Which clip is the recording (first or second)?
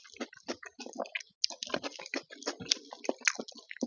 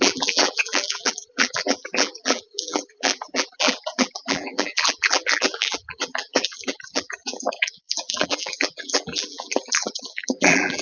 first